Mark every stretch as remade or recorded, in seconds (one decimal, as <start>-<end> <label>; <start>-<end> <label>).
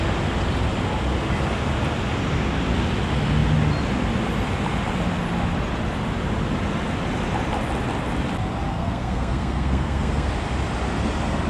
0.0-8.7 recorded; 8.7-10.3 remade; 10.3-11.5 recorded